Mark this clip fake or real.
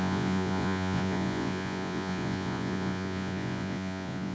fake